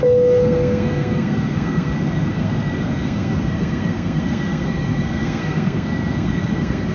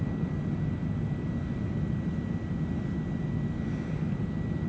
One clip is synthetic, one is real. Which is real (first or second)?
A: second